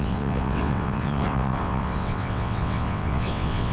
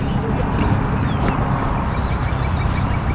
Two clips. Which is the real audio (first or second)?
second